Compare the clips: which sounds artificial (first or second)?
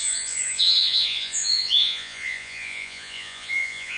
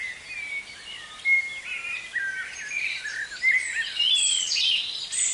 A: first